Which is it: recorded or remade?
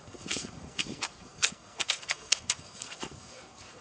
remade